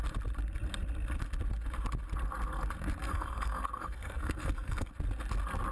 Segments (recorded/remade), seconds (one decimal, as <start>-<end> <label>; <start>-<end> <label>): 0.0-3.0 recorded; 3.0-4.9 remade; 4.9-5.7 recorded